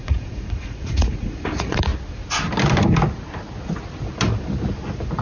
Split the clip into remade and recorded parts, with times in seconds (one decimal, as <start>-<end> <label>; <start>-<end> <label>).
0.0-1.9 remade; 1.9-5.2 recorded